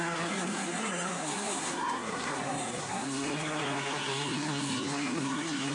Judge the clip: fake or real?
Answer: fake